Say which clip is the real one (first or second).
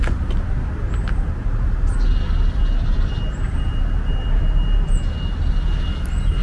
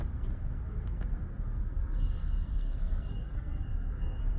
first